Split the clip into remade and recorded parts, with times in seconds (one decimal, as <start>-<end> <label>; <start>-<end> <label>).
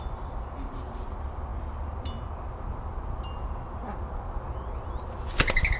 0.0-5.8 recorded